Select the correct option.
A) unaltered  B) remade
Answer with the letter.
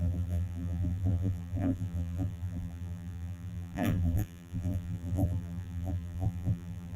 B